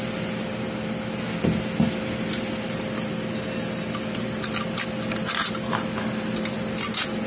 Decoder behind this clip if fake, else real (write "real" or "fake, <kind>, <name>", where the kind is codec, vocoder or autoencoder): real